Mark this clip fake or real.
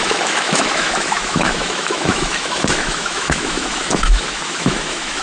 fake